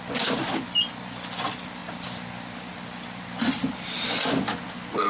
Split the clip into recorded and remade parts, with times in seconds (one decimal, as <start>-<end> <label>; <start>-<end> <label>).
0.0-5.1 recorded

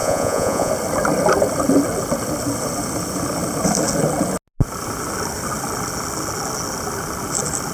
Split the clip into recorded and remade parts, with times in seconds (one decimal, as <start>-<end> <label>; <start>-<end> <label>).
0.0-0.7 remade; 0.7-7.7 recorded

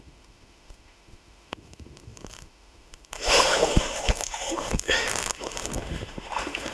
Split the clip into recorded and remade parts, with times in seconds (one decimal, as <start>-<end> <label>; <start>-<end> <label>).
0.0-6.7 remade

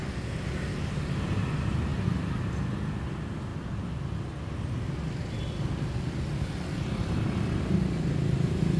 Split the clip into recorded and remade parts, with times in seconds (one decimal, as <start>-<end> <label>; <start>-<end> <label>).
0.0-8.8 recorded

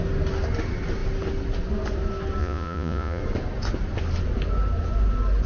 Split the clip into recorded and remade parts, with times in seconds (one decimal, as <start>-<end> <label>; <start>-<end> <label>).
0.0-2.4 recorded; 2.4-3.2 remade; 3.2-5.5 recorded

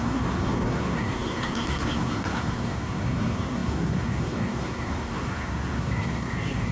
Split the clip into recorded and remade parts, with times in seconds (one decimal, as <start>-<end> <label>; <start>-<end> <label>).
0.0-6.7 remade

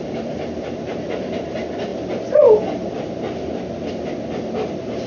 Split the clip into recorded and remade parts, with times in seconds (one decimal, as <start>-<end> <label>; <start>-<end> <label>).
0.0-5.1 recorded